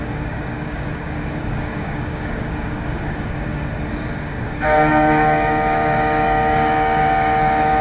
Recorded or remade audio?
remade